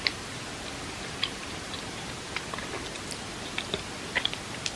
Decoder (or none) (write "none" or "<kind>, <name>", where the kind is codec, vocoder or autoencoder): none